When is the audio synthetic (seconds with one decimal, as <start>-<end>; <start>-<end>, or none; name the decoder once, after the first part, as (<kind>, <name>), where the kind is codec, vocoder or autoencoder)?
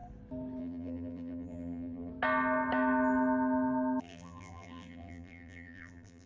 0.6-2.1 (vocoder, BigVGAN v2); 4.0-6.3